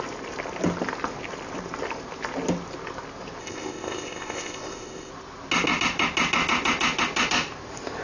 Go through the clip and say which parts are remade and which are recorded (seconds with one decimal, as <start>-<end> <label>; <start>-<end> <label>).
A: 0.0-3.4 recorded; 3.4-5.1 remade; 5.1-8.0 recorded